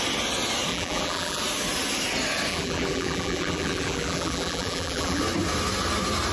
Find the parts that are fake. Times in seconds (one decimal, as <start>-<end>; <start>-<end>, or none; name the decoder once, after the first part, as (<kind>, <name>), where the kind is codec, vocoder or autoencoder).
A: 0.7-1.4 (vocoder, BigVGAN v2); 2.5-5.2